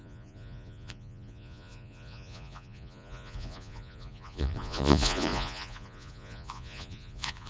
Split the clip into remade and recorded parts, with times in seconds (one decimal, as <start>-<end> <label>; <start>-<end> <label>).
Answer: 0.0-7.5 remade